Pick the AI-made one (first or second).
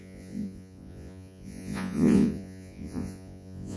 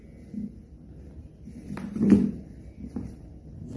first